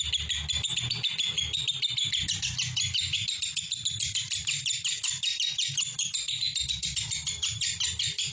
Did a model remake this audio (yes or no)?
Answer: no